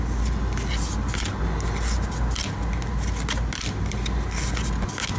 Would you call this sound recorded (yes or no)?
yes